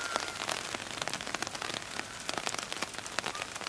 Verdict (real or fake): real